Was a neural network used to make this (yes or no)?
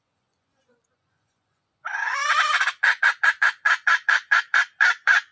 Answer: yes